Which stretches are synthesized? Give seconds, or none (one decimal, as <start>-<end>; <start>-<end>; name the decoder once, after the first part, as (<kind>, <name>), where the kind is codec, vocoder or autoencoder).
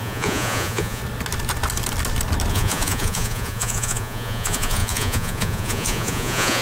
0.0-1.0 (vocoder, Vocos); 2.5-6.6